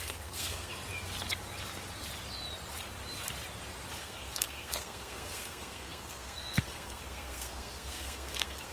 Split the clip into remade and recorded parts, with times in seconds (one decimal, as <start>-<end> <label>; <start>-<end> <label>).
0.0-0.7 remade; 0.7-4.0 recorded; 4.0-8.7 remade